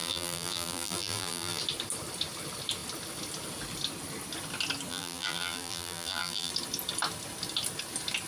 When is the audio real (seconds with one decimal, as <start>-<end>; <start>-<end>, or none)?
1.6-4.9; 6.5-8.3